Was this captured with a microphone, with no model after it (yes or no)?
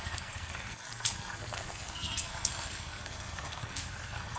no